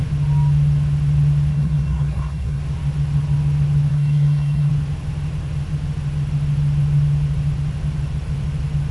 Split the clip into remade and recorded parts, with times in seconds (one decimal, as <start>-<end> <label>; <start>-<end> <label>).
0.0-1.5 recorded; 1.5-2.6 remade; 2.6-3.9 recorded; 3.9-4.7 remade; 4.7-8.9 recorded